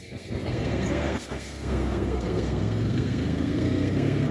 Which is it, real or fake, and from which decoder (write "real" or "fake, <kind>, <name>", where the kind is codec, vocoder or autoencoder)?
fake, codec, SNAC